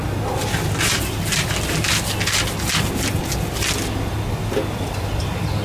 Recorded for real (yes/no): yes